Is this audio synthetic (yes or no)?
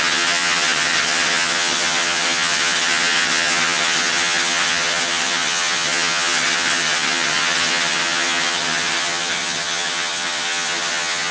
yes